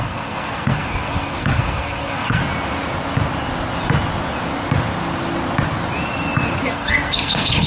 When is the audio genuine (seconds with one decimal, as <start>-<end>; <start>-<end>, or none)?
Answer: 2.4-6.7